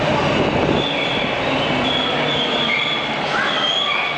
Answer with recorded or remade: recorded